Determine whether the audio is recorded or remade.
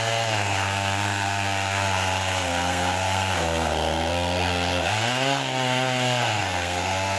remade